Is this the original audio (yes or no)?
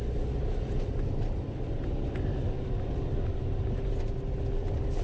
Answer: yes